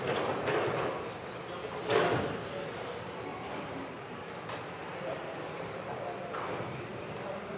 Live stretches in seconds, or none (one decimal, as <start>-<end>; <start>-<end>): 0.0-3.3; 6.5-7.6